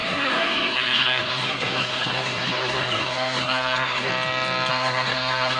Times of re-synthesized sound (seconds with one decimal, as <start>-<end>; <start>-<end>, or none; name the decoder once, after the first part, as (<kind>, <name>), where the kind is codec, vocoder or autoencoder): 0.0-4.1 (codec, SNAC); 4.7-5.6